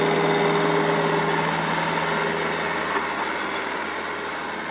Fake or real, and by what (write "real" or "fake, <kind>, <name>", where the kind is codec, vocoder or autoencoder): real